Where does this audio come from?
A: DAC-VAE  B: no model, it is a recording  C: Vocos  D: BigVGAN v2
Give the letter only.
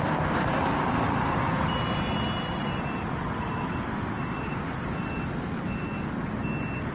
B